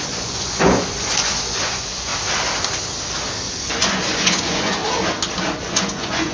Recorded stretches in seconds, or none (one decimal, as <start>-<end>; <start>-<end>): 2.1-3.6; 4.8-5.6